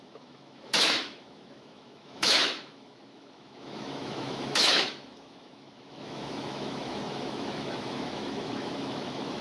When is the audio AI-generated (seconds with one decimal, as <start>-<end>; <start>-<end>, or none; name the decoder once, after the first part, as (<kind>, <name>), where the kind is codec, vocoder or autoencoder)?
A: 0.0-9.4 (autoencoder, DAC-VAE)